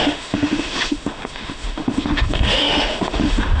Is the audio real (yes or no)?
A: no